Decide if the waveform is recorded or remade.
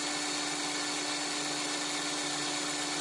recorded